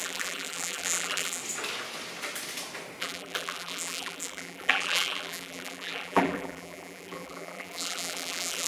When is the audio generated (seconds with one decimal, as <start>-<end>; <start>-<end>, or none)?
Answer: 0.0-1.4; 3.0-8.7